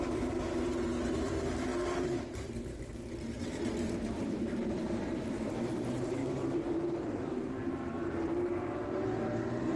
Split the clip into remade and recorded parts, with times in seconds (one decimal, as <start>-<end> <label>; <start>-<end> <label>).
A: 0.0-9.8 remade